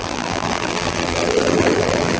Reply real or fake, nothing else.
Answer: fake